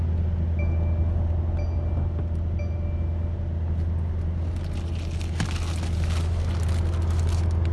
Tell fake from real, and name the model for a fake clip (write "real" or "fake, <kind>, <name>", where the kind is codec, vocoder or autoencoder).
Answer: real